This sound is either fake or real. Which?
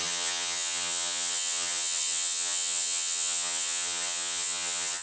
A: fake